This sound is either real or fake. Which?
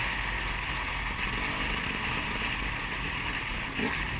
real